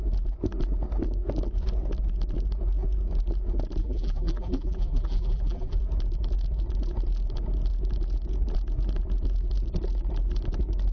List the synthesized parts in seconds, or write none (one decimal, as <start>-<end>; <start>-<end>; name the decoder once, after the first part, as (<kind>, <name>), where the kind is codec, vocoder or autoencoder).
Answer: 3.8-5.8 (vocoder, BigVGAN v2)